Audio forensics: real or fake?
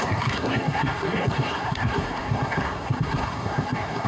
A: fake